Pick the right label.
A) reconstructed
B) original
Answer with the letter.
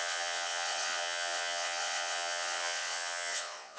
A